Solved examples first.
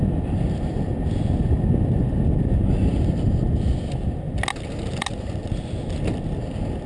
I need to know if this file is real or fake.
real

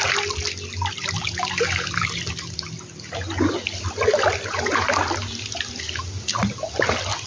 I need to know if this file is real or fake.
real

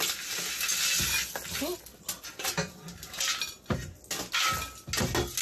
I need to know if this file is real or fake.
real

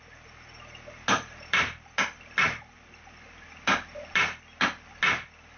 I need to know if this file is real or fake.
real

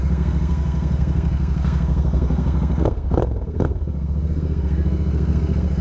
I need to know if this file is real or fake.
fake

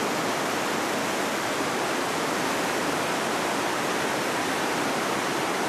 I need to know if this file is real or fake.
real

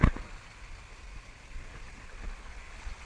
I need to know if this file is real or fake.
real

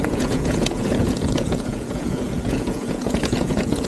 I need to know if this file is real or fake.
fake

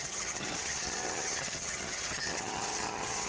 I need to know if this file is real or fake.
fake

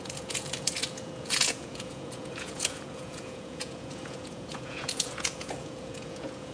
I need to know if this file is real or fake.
fake